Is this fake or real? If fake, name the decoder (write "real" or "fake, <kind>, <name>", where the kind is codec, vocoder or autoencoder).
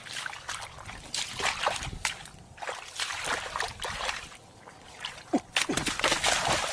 real